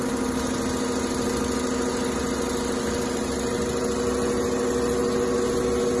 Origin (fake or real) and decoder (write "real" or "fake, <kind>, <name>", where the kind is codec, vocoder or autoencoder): real